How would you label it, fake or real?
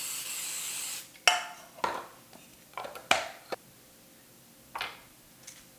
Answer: real